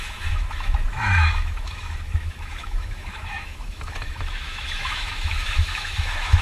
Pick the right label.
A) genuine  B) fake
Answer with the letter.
B